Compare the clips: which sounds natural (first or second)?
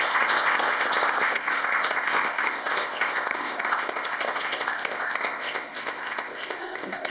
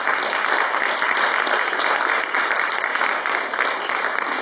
second